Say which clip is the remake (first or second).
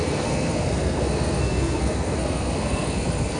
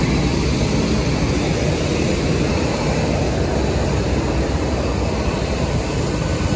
first